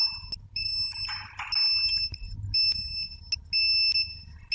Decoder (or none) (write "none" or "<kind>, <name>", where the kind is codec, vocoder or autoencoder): none